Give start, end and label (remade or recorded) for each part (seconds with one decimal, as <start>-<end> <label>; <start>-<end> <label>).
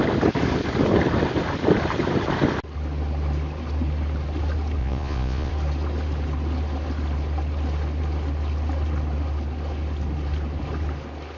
0.0-4.8 recorded; 4.8-5.5 remade; 5.5-11.4 recorded